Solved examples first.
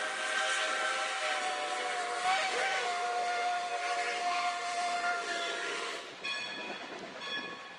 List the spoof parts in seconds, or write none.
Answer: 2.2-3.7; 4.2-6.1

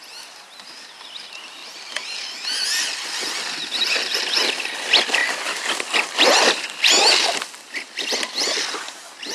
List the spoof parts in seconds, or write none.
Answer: none

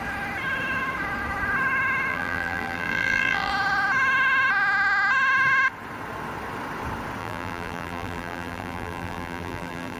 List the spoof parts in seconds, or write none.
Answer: 2.1-3.5; 7.2-10.0